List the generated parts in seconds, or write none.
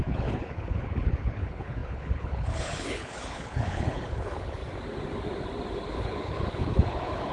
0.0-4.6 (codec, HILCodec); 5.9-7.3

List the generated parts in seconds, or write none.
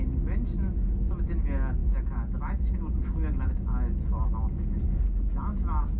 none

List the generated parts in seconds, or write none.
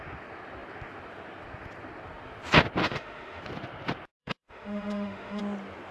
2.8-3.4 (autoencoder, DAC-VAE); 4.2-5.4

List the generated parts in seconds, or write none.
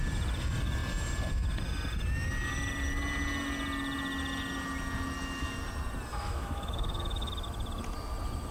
6.1-7.3 (autoencoder, DAC-VAE)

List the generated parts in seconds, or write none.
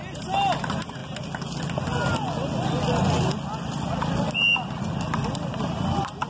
none